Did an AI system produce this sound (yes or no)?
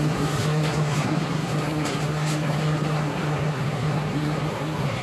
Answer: yes